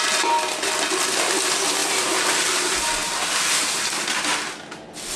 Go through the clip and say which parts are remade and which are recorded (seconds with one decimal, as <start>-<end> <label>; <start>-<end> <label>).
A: 0.0-5.2 recorded